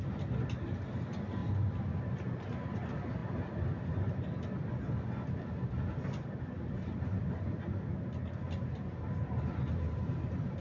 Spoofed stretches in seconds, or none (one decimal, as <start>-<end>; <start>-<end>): none